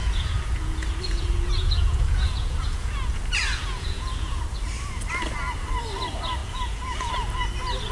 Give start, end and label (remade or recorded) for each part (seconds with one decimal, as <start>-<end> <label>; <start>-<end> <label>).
0.0-4.4 remade; 4.4-6.4 recorded; 6.4-7.1 remade; 7.1-7.9 recorded